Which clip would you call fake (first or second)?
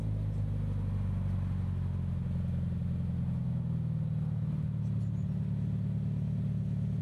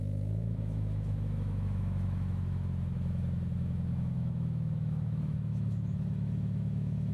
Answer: second